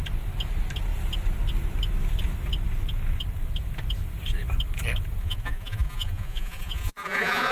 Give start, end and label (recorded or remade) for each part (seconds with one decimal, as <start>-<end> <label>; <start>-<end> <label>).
0.0-5.2 recorded; 5.2-7.5 remade